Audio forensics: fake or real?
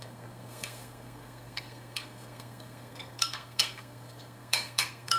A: fake